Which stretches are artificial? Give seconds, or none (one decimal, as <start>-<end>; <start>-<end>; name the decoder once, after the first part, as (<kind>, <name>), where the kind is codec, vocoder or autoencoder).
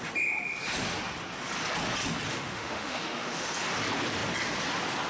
2.3-3.5 (autoencoder, DAC-VAE)